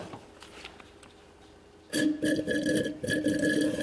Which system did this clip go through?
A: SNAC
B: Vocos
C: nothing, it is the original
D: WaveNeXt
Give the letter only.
C